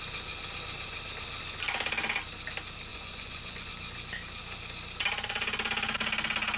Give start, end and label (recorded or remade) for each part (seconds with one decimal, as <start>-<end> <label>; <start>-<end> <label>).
0.0-2.9 recorded; 2.9-3.7 remade; 3.7-6.6 recorded